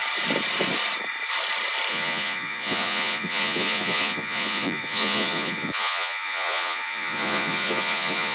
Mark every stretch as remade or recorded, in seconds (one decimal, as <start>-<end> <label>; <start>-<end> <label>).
0.0-1.9 recorded; 1.9-8.3 remade